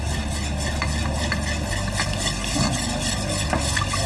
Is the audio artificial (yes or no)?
no